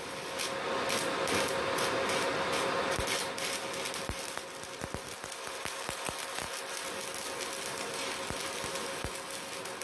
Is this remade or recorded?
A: recorded